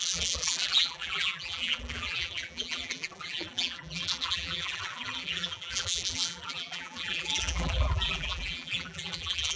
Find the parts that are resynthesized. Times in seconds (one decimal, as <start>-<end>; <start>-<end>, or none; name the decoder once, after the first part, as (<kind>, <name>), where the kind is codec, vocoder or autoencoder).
0.0-9.6 (vocoder, BigVGAN v2)